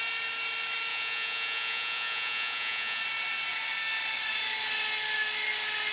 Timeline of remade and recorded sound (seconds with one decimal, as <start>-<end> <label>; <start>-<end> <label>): 0.0-0.9 recorded; 0.9-3.0 remade; 3.0-5.9 recorded